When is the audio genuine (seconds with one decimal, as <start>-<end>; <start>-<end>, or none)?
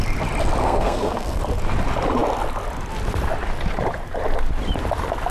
0.0-0.6; 1.4-5.3